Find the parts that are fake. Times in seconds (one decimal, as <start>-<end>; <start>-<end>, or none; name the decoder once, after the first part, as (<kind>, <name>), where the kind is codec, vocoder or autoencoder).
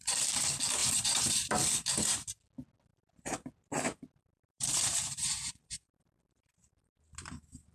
0.8-1.5 (vocoder, BigVGAN v2); 2.9-7.7